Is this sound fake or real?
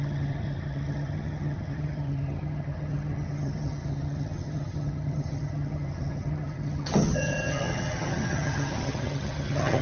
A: fake